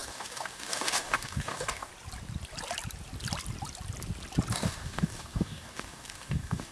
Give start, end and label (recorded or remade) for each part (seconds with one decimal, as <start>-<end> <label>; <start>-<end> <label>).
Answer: 0.0-1.9 remade; 1.9-4.5 recorded; 4.5-6.7 remade